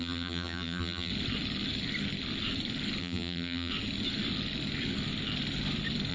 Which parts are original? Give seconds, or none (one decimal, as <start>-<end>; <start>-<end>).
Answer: 1.1-3.0; 3.7-6.1